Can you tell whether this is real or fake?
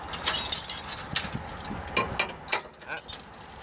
real